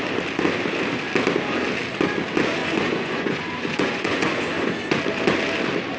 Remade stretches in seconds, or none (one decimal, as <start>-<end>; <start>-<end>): 2.6-5.0